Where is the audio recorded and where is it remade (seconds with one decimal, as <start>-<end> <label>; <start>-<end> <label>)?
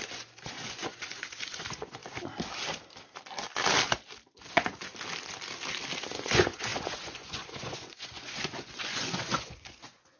0.0-2.0 remade; 2.0-4.5 recorded; 4.5-4.9 remade; 4.9-6.1 recorded; 6.1-10.2 remade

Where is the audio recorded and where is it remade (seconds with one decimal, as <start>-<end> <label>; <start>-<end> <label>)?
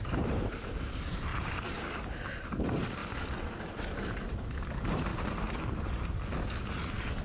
0.0-3.0 remade; 3.0-4.0 recorded; 4.0-5.1 remade; 5.1-7.2 recorded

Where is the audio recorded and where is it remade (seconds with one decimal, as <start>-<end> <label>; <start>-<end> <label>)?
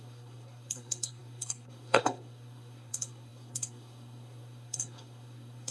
0.0-5.7 remade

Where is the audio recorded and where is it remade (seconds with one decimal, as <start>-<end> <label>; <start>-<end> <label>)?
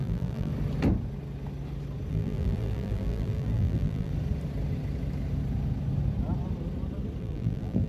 0.0-0.5 remade; 0.5-2.1 recorded; 2.1-4.1 remade; 4.1-7.2 recorded; 7.2-7.9 remade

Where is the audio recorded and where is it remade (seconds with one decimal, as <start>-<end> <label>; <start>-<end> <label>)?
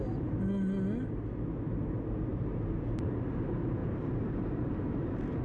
0.0-2.3 recorded; 2.3-3.1 remade; 3.1-3.8 recorded; 3.8-5.4 remade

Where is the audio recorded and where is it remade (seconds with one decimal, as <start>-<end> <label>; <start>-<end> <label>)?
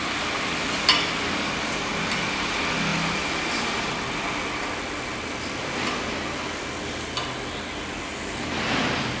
0.0-9.2 recorded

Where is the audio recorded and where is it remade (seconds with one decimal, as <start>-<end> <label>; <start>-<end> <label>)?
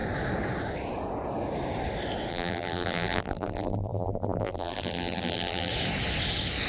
0.0-2.3 recorded; 2.3-5.7 remade; 5.7-6.7 recorded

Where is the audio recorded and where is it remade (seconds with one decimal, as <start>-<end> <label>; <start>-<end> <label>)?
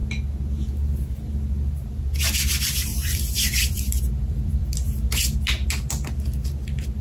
0.0-2.9 recorded; 2.9-5.2 remade; 5.2-7.0 recorded